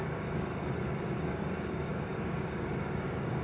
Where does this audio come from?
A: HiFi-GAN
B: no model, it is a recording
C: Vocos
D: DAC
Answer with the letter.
D